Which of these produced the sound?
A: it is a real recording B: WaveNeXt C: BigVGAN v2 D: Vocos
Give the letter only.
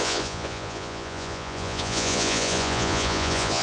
D